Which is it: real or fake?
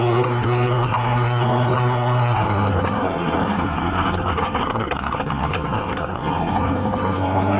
fake